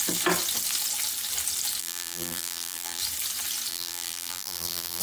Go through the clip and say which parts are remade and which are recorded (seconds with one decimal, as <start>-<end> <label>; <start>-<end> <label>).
0.0-1.8 recorded; 1.8-3.0 remade; 3.0-3.7 recorded; 3.7-5.0 remade